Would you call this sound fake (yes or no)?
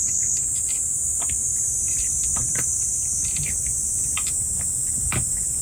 no